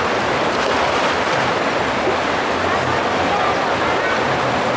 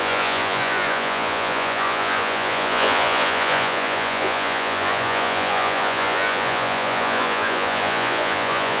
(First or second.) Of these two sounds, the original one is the first